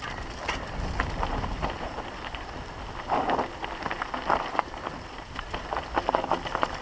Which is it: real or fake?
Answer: real